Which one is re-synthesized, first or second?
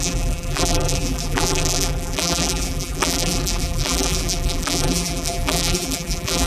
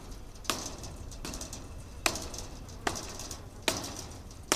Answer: first